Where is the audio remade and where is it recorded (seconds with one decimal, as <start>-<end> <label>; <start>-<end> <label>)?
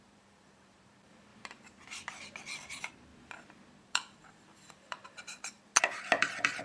0.0-1.3 remade; 1.3-2.6 recorded; 2.6-3.1 remade; 3.1-3.8 recorded; 3.8-5.7 remade; 5.7-6.6 recorded